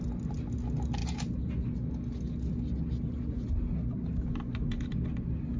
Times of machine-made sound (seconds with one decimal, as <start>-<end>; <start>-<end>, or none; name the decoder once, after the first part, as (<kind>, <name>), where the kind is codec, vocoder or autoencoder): none